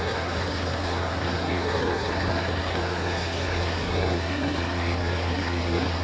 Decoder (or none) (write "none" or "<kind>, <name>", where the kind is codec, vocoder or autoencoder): codec, SNAC